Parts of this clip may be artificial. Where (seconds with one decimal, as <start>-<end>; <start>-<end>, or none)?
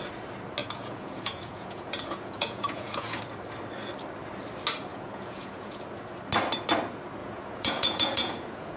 0.6-3.2; 4.9-5.8; 7.2-8.8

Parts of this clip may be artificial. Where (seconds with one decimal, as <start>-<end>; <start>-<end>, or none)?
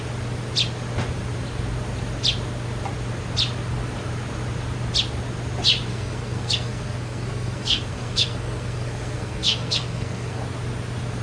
5.9-10.4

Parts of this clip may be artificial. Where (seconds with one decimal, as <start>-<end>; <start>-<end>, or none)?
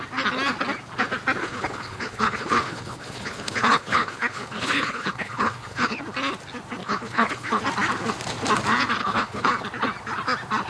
1.4-6.0; 6.8-7.6; 9.0-9.5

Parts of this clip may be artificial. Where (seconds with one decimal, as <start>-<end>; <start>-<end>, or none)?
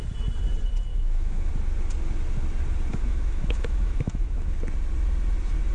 0.9-1.5; 2.9-4.4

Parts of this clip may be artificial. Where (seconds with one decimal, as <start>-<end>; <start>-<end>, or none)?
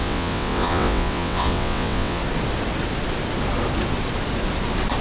0.0-2.2